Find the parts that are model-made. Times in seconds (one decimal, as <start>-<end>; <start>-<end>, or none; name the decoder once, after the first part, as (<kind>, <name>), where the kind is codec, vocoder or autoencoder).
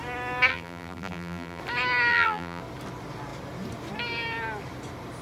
0.5-1.6 (vocoder, BigVGAN v2); 2.1-2.6